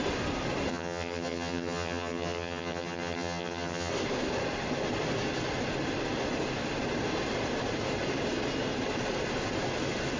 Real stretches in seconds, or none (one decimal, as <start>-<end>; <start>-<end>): 0.0-0.7; 3.9-10.2

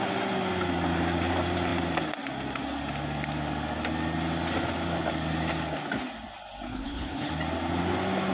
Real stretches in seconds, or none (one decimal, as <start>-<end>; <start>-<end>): 0.0-6.7; 7.3-8.3

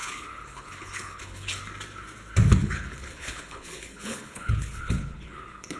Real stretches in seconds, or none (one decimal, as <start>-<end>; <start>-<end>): 1.6-2.6